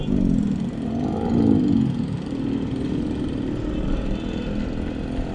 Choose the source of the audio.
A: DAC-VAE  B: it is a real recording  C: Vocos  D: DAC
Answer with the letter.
B